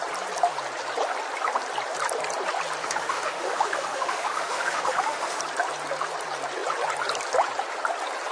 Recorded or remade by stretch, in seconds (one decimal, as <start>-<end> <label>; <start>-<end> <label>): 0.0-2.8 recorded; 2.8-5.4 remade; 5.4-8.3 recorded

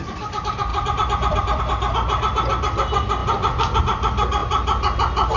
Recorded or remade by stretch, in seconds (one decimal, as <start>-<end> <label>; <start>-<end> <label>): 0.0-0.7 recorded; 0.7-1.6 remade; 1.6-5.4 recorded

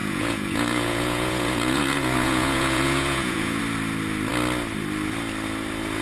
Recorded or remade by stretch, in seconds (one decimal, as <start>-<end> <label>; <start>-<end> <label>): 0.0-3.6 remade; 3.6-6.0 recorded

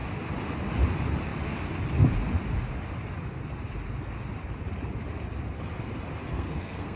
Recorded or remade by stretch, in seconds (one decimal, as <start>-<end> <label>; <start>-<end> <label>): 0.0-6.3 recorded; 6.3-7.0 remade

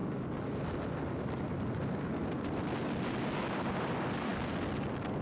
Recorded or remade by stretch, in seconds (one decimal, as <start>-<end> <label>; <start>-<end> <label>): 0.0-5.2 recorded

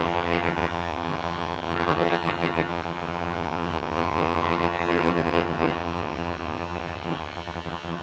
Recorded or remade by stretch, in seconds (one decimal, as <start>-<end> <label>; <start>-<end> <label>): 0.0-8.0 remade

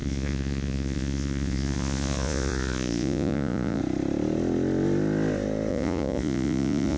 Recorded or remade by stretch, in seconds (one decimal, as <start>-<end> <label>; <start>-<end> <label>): 0.0-3.8 remade; 3.8-5.7 recorded; 5.7-7.0 remade

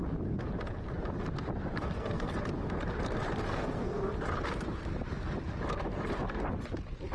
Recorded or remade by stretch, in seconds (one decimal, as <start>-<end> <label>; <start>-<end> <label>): 0.0-1.7 recorded; 1.7-2.3 remade; 2.3-3.5 recorded; 3.5-4.1 remade; 4.1-7.1 recorded